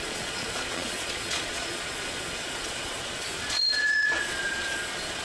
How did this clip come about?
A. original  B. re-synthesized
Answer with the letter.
B